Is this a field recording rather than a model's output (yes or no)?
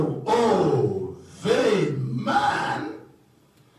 yes